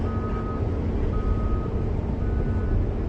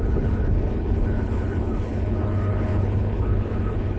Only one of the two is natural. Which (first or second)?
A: first